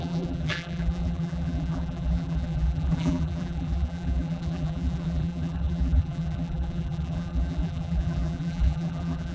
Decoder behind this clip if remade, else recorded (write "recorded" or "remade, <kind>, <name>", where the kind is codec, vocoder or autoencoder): remade, vocoder, BigVGAN v2